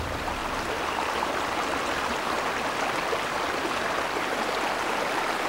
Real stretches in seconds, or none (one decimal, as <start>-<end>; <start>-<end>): 0.4-3.7